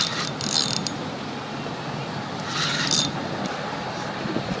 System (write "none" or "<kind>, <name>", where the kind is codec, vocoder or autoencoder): none